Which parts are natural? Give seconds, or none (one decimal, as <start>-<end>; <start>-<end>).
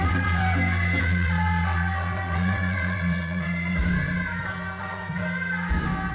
0.4-1.0; 3.8-4.8; 5.2-6.1